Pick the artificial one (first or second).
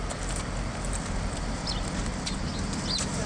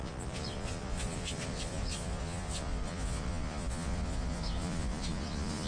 second